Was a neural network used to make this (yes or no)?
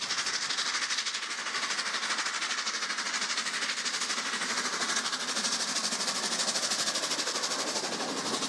no